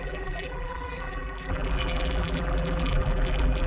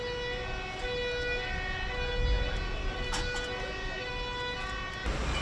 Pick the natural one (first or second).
second